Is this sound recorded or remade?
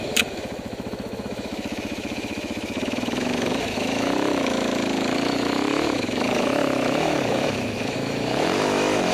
remade